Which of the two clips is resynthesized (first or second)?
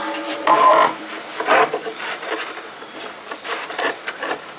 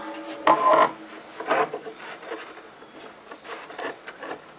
first